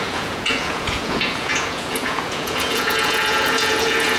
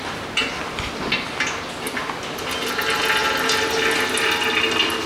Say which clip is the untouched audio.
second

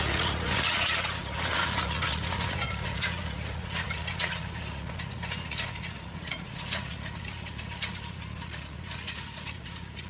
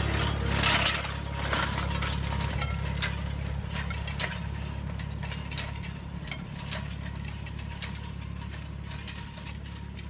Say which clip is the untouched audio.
second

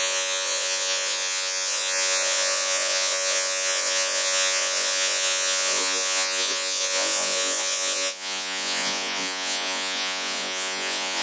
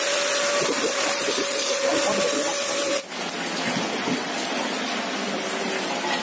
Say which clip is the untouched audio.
second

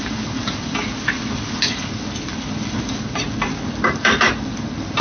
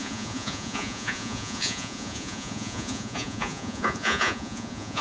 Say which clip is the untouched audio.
first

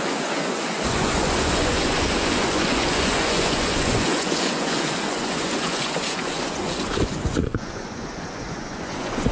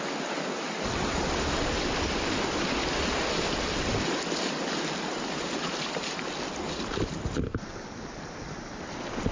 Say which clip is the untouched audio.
second